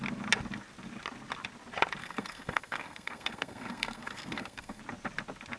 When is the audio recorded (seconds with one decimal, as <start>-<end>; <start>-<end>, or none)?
0.0-2.0; 4.8-5.6